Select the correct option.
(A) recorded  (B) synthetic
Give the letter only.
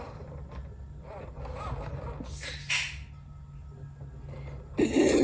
A